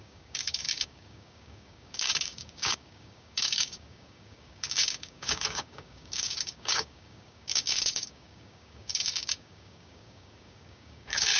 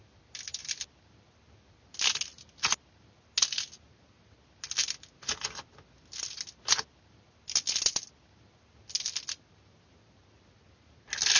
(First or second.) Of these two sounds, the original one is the second